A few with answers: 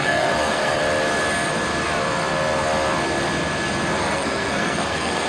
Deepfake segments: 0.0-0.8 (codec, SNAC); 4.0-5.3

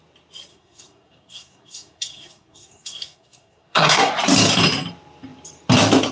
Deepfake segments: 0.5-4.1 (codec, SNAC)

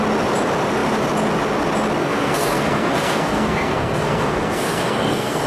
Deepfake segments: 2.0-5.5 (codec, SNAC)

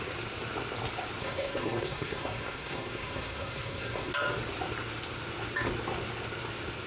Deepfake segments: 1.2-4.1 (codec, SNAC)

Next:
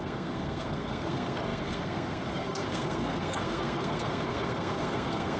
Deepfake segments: 0.0-5.4 (codec, SNAC)

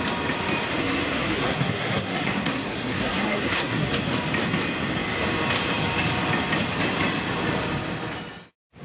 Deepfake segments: 0.8-3.9 (codec, SNAC)

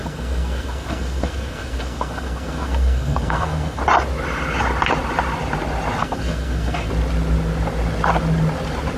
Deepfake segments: 0.0-3.8 (codec, SNAC); 6.0-6.9